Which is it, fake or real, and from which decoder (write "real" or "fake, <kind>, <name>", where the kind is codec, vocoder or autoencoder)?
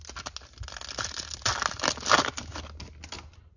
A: real